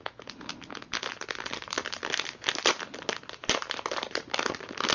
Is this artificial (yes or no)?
no